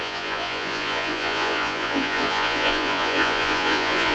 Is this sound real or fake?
fake